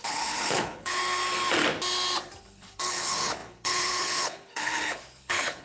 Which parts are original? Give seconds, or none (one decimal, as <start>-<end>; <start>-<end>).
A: 1.0-2.4